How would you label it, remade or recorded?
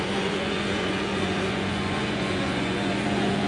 remade